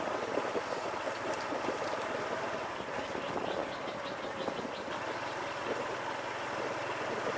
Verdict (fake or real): real